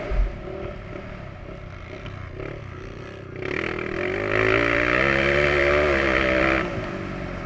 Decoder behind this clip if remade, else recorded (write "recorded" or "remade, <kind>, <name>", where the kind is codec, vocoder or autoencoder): recorded